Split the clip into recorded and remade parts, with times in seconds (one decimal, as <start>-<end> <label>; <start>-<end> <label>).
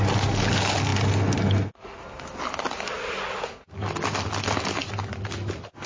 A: 0.0-5.9 recorded